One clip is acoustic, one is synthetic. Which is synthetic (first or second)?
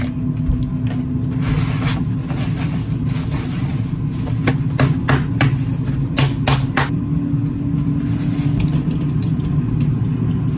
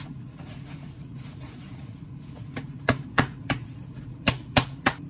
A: second